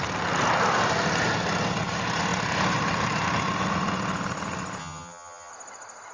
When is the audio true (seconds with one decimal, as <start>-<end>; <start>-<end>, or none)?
0.0-4.8; 5.5-6.1

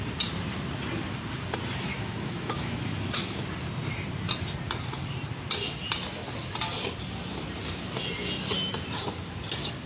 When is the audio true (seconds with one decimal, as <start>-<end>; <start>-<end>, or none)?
0.0-1.9; 3.4-9.9

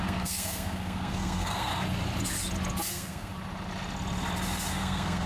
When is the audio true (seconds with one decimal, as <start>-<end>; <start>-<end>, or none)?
1.7-2.9; 3.3-4.7

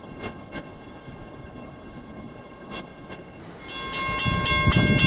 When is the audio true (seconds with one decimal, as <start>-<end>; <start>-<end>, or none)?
3.4-5.1

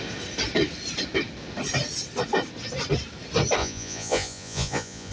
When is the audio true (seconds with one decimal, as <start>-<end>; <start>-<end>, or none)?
0.0-3.6

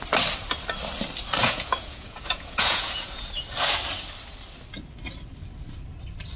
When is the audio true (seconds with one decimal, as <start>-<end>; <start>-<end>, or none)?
0.0-1.4; 3.2-6.4

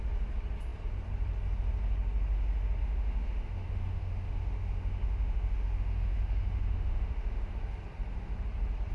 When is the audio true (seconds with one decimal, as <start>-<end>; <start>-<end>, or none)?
0.0-2.8; 7.5-8.9